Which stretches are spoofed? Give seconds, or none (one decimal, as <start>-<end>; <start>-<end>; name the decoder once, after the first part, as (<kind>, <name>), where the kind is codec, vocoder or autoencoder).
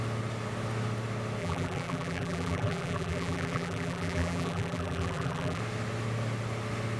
1.4-5.6 (vocoder, BigVGAN v2)